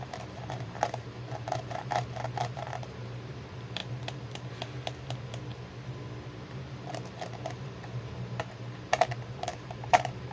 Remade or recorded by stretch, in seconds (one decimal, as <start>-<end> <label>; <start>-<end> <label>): 0.0-3.8 remade; 3.8-6.4 recorded; 6.4-10.3 remade

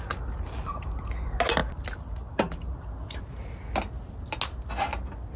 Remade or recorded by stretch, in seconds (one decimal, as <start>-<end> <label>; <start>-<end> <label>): 0.0-1.6 recorded; 1.6-2.9 remade; 2.9-5.4 recorded